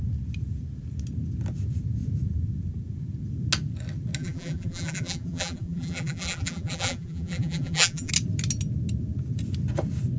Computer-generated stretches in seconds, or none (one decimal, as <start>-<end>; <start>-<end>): 4.2-8.1